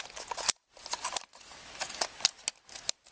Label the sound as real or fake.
real